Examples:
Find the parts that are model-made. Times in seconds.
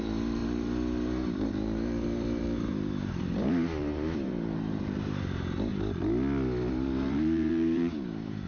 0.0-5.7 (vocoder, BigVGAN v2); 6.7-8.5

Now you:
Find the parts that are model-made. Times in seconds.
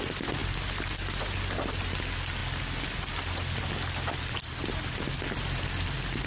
0.4-1.2 (vocoder, BigVGAN v2); 2.4-6.3